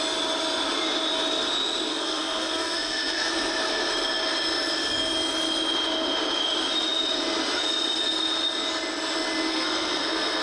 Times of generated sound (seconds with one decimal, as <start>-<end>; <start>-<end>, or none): 1.9-3.3; 9.5-10.4